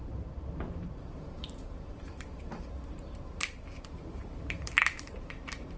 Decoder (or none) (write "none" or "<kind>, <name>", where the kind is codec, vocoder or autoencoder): vocoder, BigVGAN v2